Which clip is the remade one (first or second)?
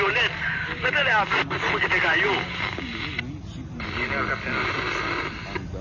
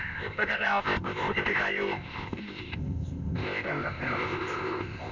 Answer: second